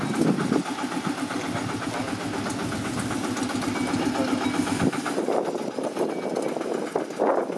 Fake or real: real